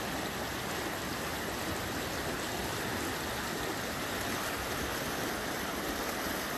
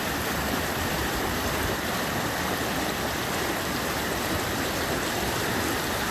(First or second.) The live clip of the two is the first